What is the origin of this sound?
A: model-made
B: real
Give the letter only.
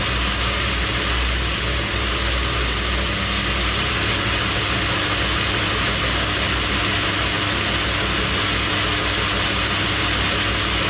B